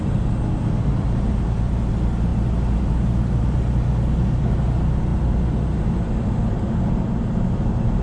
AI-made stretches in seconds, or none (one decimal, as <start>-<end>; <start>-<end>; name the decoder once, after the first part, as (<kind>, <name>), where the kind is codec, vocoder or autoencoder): none